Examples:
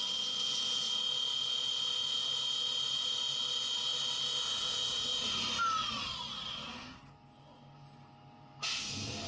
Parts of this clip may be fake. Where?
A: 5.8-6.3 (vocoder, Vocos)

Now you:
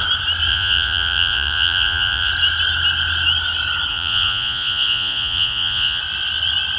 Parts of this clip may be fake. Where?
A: 0.5-2.3 (vocoder, Vocos); 3.9-6.0

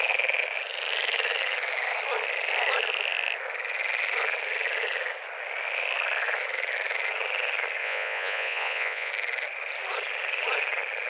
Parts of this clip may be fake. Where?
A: 7.8-9.1 (vocoder, Vocos)

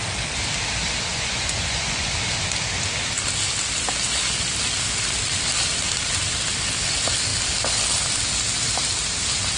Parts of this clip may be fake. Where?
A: 1.1-2.1 (vocoder, Vocos)

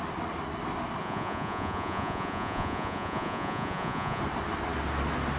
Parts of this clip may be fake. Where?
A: 1.0-4.2 (vocoder, Vocos)

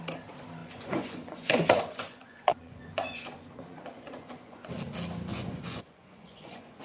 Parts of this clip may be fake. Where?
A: 0.6-4.7 (vocoder, Vocos); 5.3-6.8

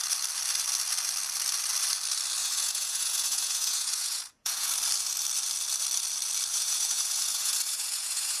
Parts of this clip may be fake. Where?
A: 2.4-4.7 (vocoder, Vocos); 6.5-8.4

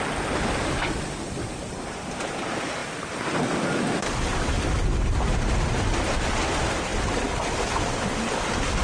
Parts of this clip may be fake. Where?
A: none